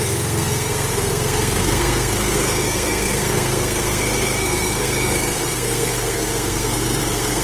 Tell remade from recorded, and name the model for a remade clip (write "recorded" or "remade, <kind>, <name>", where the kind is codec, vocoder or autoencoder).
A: remade, codec, SNAC